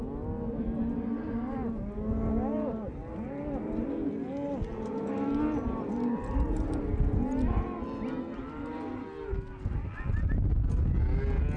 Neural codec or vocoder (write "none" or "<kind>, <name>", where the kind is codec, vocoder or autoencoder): none